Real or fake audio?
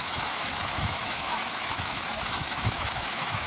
fake